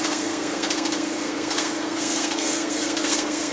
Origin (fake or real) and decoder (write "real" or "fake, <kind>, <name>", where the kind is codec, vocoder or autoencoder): fake, codec, SNAC